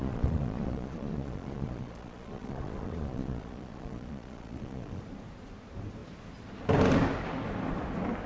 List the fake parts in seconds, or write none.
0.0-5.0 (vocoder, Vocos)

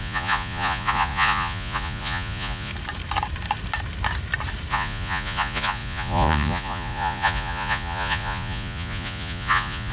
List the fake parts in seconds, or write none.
0.0-2.7 (vocoder, Vocos); 4.7-9.9

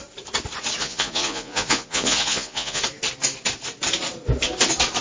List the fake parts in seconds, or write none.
0.8-2.8 (vocoder, Vocos)

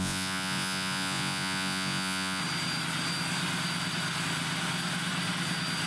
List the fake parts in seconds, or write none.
0.0-2.4 (vocoder, Vocos)

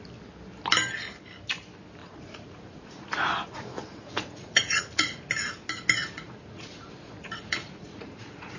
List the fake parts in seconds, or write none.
2.0-5.3 (vocoder, Vocos); 6.0-8.6